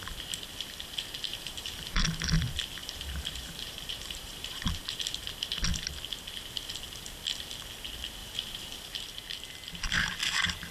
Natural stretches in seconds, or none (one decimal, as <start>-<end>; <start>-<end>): 0.0-1.3; 2.0-2.8; 4.8-8.2; 9.0-10.7